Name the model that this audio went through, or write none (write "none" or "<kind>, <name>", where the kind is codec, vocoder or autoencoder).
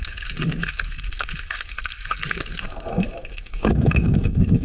codec, SNAC